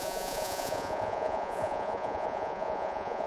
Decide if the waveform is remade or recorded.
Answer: remade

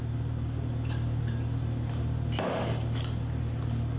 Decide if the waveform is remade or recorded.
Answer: recorded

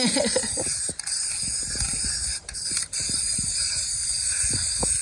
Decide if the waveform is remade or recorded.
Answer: remade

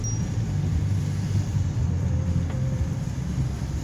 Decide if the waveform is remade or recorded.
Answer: recorded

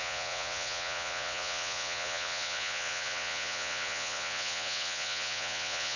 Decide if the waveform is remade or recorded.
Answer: remade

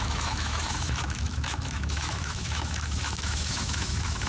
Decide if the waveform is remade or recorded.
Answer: remade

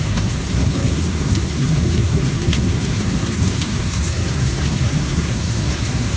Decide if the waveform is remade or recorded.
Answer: remade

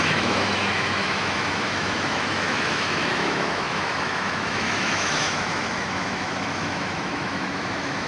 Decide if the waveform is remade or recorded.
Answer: remade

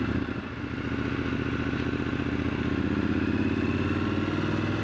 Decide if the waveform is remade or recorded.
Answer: recorded